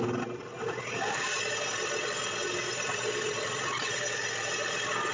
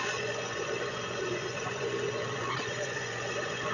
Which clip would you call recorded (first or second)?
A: first